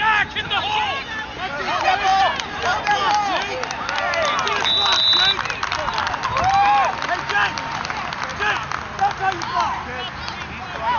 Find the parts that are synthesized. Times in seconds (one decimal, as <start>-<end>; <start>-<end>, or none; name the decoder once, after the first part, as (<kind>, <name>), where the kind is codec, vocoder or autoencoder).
none